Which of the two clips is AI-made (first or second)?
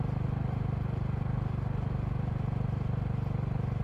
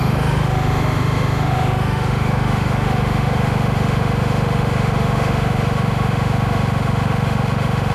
second